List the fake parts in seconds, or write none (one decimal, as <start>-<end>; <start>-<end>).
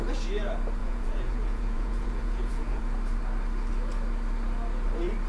0.8-2.8